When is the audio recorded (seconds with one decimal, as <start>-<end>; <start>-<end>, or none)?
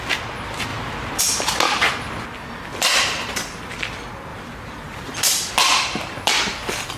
0.0-2.7; 3.6-4.3; 5.5-7.0